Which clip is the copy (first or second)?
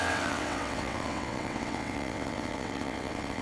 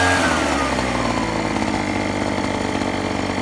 first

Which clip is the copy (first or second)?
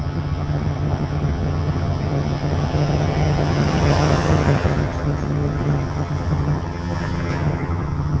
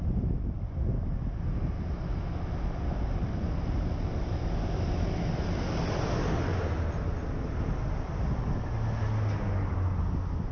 first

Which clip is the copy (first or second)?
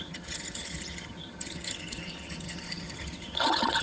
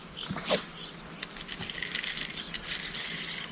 first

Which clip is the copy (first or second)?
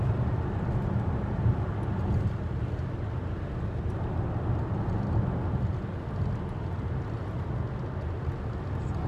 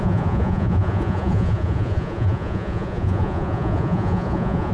second